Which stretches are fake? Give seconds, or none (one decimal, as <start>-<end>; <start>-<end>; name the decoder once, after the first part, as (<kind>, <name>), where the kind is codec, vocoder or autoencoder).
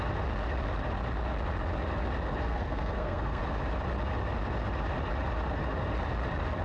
2.4-3.4 (codec, SNAC)